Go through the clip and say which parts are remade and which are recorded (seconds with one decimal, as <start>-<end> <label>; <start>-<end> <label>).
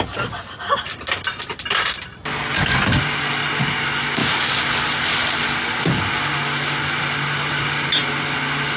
0.0-8.8 recorded